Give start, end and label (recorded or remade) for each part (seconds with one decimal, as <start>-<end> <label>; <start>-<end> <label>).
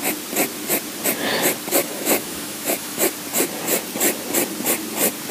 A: 0.0-1.8 recorded; 1.8-3.0 remade; 3.0-5.3 recorded